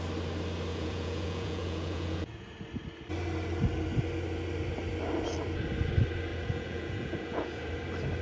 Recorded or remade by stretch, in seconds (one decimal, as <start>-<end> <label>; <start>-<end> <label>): 0.0-0.7 recorded; 0.7-2.5 remade; 2.5-6.3 recorded; 6.3-7.7 remade; 7.7-8.2 recorded